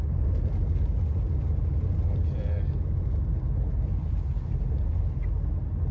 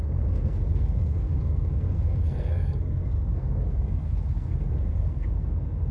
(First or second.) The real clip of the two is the first